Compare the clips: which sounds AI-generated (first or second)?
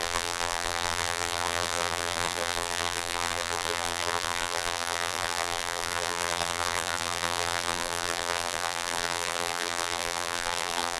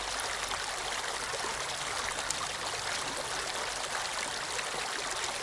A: first